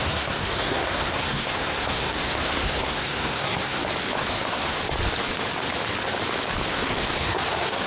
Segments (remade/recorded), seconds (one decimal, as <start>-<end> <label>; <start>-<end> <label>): 0.0-3.8 remade; 3.8-4.3 recorded; 4.3-4.8 remade; 4.8-6.7 recorded; 6.7-7.9 remade